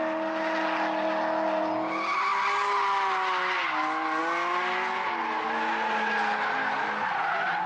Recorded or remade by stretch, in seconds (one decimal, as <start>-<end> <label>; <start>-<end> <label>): 0.0-7.7 recorded